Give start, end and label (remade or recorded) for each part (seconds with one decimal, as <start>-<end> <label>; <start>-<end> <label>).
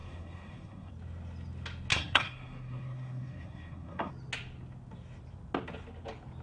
0.0-0.9 remade; 0.9-1.9 recorded; 1.9-4.1 remade; 4.1-6.4 recorded